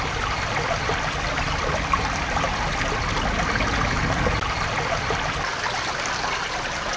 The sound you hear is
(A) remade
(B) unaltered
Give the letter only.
B